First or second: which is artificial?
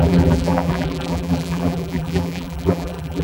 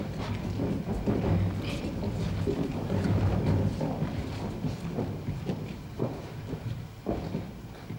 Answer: first